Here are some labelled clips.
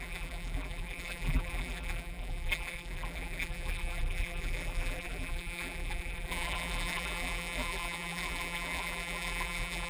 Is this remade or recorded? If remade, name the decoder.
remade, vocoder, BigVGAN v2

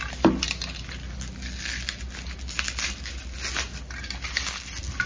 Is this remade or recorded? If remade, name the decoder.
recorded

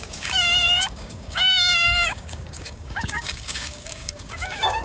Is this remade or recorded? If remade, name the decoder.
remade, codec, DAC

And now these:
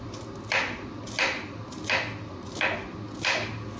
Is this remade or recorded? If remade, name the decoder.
recorded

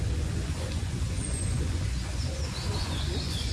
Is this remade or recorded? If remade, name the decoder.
remade, vocoder, Vocos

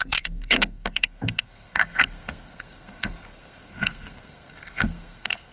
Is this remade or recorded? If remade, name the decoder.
remade, codec, SNAC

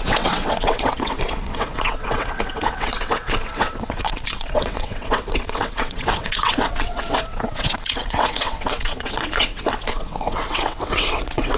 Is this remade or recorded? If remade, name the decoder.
remade, vocoder, WaveNeXt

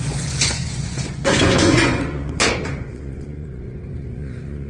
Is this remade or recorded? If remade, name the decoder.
remade, vocoder, Vocos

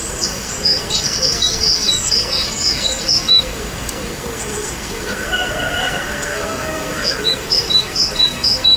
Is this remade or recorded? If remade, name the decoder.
remade, codec, SNAC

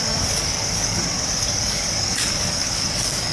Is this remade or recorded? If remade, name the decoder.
remade, codec, DAC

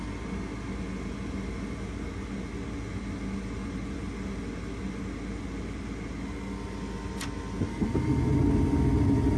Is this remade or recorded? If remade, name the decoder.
recorded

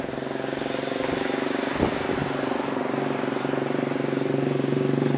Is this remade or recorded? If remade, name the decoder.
recorded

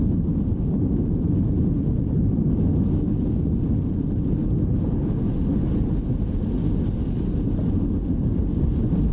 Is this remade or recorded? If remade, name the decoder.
recorded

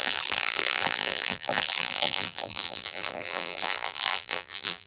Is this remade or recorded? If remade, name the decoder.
remade, vocoder, BigVGAN v2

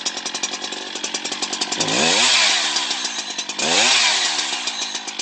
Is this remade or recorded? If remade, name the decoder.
recorded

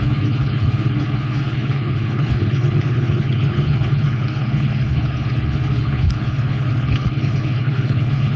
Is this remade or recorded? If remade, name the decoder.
remade, codec, HILCodec